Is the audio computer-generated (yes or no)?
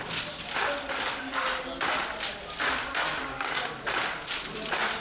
no